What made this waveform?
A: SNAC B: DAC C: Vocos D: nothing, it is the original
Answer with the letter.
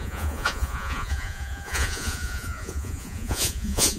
C